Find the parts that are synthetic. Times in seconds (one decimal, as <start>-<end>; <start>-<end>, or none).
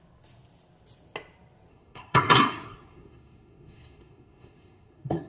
1.7-5.3